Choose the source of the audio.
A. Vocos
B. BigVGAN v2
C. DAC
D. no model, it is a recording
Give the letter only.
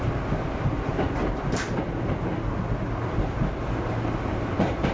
D